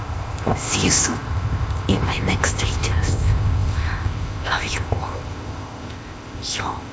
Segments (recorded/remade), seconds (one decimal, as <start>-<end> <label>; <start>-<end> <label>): 0.0-6.9 remade